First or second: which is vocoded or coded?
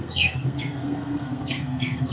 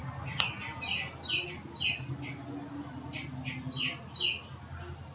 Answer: first